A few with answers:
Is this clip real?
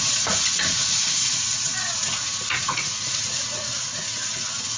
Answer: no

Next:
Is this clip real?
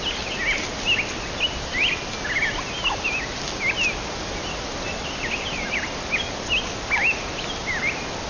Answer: yes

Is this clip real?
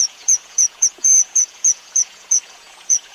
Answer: no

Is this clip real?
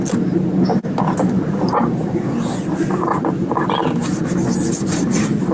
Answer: yes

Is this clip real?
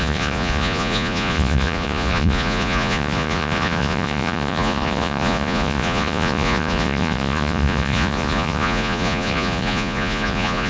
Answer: no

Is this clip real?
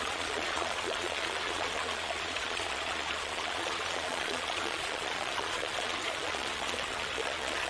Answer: no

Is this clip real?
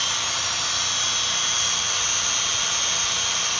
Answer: yes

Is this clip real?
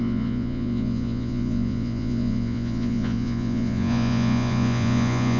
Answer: no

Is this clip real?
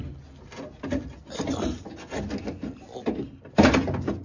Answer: yes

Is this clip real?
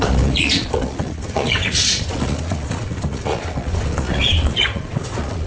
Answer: no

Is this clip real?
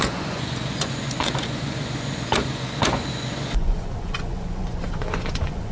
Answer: no